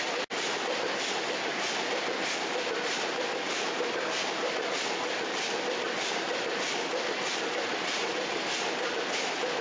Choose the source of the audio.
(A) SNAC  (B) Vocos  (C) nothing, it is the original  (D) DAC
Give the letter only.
C